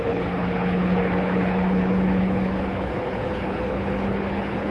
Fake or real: fake